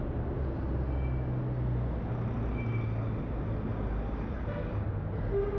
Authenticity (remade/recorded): recorded